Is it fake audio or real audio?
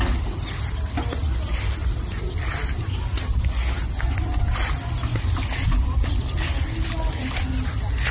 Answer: real